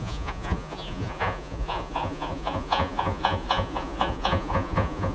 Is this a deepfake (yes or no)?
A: yes